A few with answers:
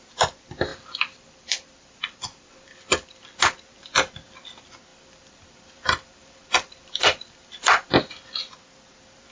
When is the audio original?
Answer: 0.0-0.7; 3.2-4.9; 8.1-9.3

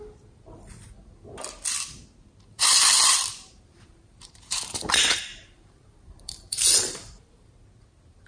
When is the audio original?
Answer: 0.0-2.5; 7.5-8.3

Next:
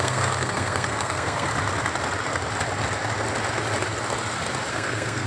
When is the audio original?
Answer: 1.5-4.7

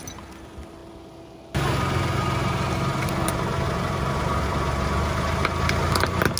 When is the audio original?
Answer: 0.0-6.4

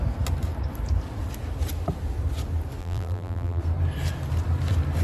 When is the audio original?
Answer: 0.0-2.8; 3.6-5.0

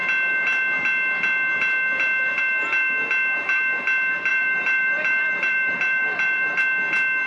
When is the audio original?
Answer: 0.0-4.3; 6.6-7.3